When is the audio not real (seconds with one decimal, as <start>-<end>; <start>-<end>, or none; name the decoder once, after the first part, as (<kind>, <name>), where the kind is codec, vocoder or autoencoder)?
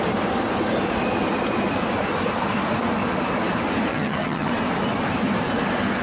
3.9-4.5 (vocoder, HiFi-GAN)